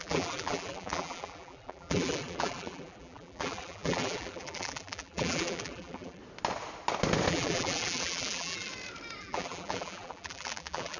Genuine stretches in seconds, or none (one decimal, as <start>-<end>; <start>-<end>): 6.2-7.3; 8.7-9.2